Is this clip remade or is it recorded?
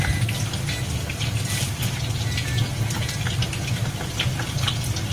recorded